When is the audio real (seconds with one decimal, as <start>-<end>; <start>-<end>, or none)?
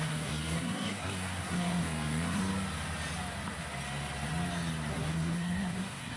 2.4-4.9